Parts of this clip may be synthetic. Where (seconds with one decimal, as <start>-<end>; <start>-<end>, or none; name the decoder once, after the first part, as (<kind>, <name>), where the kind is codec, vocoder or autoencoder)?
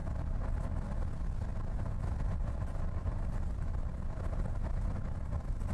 1.5-4.9 (vocoder, BigVGAN v2)